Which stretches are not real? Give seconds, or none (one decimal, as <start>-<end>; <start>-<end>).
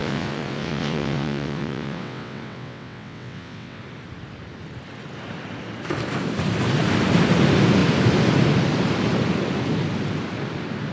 0.0-3.8